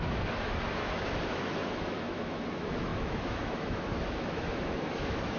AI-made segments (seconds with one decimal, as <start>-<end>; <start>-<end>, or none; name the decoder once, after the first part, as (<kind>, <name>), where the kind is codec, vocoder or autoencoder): 0.0-5.4 (autoencoder, DAC-VAE)